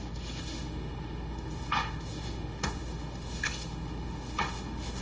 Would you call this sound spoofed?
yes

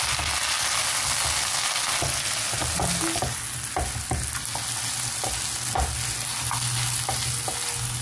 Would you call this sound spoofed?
no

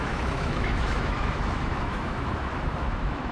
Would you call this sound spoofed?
yes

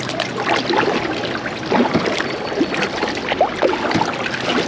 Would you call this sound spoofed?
no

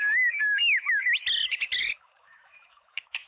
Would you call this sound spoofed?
yes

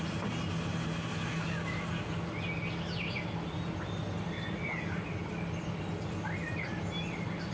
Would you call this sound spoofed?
no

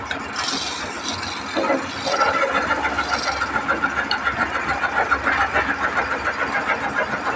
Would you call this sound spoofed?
no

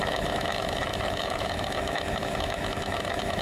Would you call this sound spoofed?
yes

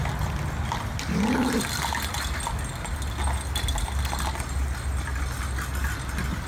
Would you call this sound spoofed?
no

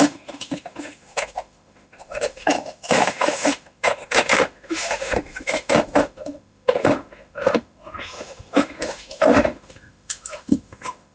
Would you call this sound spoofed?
yes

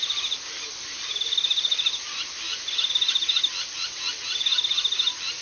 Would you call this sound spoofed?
no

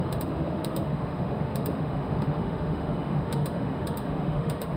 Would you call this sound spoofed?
yes